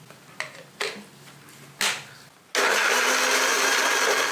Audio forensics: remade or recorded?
recorded